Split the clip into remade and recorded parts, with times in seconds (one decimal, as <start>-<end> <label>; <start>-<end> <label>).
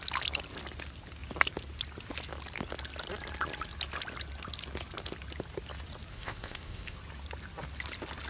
0.0-6.1 recorded; 6.1-7.0 remade; 7.0-8.3 recorded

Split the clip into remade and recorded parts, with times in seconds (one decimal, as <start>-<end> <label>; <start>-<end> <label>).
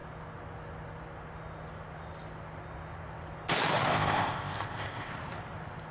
0.0-3.9 recorded; 3.9-5.1 remade; 5.1-5.9 recorded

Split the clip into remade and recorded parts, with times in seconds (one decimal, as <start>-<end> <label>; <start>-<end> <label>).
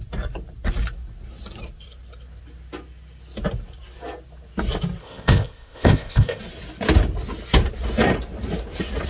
0.0-5.0 recorded; 5.0-6.4 remade; 6.4-9.1 recorded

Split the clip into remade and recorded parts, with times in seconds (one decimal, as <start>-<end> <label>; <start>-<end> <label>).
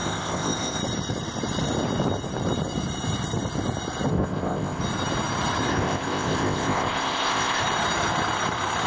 0.0-0.8 remade; 0.8-4.1 recorded; 4.1-4.8 remade; 4.8-5.7 recorded; 5.7-7.6 remade; 7.6-8.9 recorded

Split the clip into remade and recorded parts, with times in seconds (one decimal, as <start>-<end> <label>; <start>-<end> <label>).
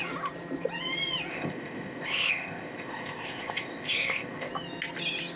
0.0-1.3 recorded; 1.3-4.5 remade; 4.5-5.4 recorded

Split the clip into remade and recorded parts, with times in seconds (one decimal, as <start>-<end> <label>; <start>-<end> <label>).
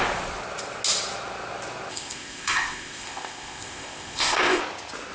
0.0-1.9 recorded; 1.9-4.6 remade; 4.6-5.1 recorded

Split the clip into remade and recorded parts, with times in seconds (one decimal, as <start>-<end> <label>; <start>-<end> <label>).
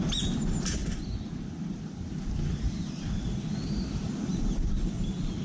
0.0-5.4 recorded